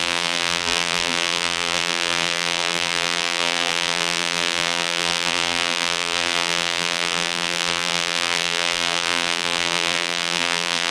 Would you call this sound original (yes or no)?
no